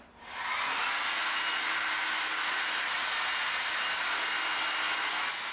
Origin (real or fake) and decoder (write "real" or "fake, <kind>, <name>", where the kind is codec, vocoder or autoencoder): real